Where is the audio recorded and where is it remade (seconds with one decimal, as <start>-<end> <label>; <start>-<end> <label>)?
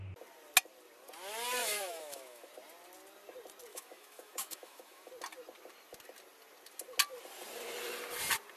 0.0-1.6 recorded; 1.6-2.5 remade; 2.5-3.7 recorded; 3.7-5.1 remade; 5.1-8.6 recorded